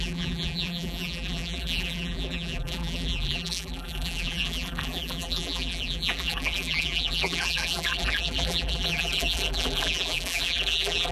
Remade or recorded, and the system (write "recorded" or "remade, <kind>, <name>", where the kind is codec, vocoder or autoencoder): remade, vocoder, BigVGAN v2